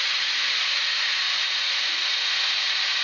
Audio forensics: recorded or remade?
remade